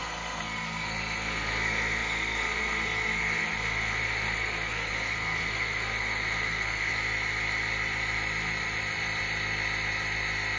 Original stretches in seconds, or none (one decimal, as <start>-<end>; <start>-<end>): 6.9-10.6